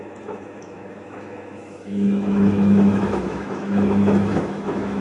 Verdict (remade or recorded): remade